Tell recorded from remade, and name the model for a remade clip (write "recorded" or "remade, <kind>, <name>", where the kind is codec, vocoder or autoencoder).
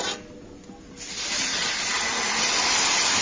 recorded